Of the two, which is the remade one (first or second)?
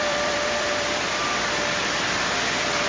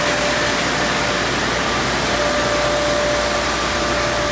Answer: first